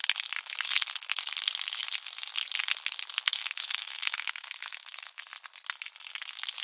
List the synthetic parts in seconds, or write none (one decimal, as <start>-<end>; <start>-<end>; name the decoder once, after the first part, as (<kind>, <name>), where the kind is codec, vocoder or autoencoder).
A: 3.1-5.2 (autoencoder, DAC-VAE)